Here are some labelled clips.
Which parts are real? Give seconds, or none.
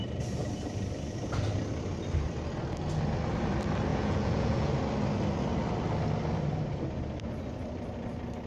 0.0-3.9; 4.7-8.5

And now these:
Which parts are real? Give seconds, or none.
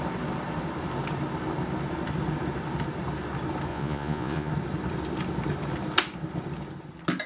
0.0-3.7; 4.5-7.3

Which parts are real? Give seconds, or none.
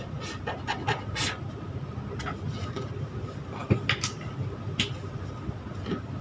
0.0-6.2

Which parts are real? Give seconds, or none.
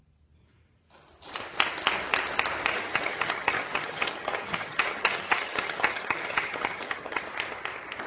0.0-2.7; 7.2-8.1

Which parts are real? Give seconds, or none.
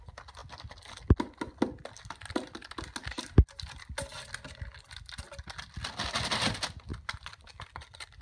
0.0-8.2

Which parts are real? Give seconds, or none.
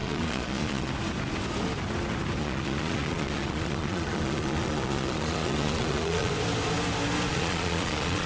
0.9-2.4; 6.3-7.3